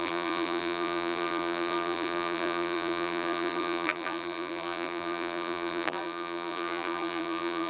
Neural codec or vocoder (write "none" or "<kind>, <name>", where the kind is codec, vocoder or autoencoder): vocoder, BigVGAN v2